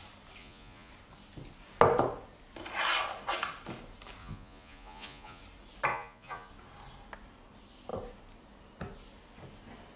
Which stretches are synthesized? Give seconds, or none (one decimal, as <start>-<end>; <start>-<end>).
0.4-0.9; 4.2-5.4; 5.9-6.5